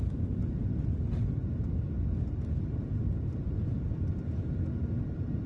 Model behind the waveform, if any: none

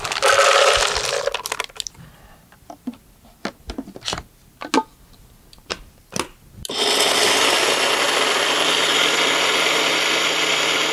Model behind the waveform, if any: none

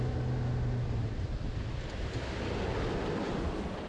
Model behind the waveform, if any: none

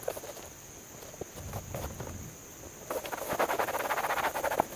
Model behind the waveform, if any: none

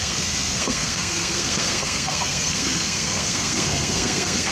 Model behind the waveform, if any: codec, SNAC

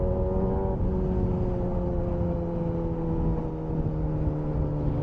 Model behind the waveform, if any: none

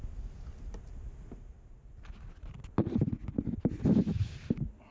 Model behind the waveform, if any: none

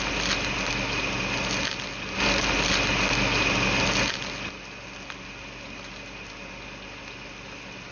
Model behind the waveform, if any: none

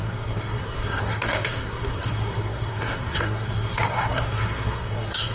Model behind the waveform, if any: codec, SNAC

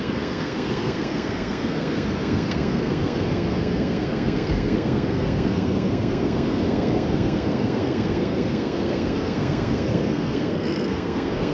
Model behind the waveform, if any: codec, SNAC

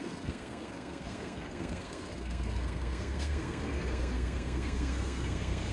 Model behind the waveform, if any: codec, SNAC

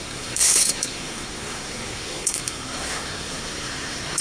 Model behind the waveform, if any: codec, SNAC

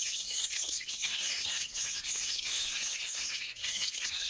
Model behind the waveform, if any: codec, SNAC